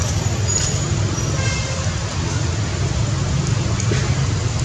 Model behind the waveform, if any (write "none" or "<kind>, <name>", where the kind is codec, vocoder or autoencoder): none